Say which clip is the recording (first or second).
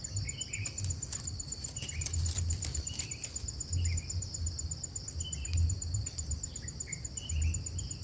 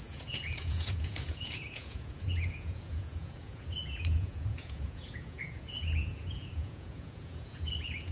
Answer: first